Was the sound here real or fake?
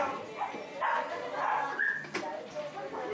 real